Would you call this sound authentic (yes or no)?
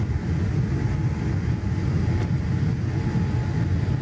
yes